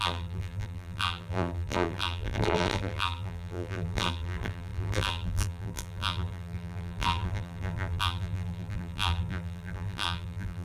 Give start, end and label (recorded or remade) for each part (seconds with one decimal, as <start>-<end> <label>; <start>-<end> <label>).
0.0-10.6 remade